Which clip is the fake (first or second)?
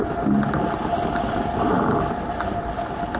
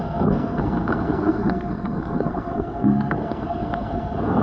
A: second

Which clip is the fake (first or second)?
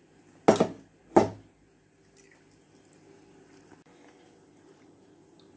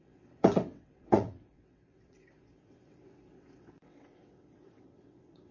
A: second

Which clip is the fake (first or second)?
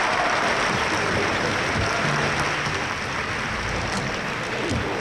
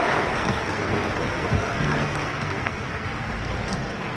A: second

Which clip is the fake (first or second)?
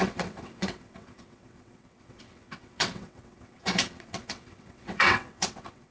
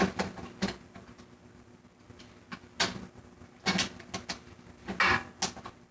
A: first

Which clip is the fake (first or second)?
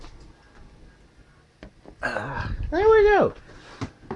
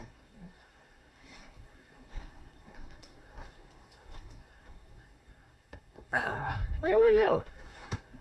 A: second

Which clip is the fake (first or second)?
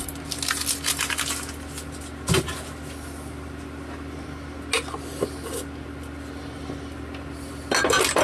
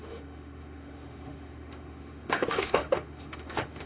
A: second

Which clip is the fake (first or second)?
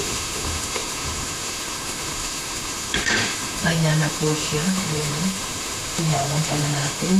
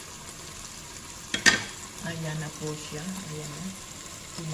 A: first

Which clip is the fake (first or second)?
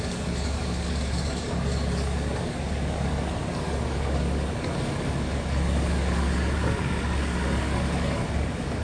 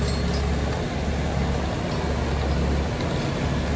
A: first